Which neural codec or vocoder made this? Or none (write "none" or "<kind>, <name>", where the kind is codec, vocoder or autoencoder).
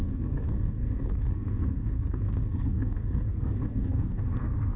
codec, SNAC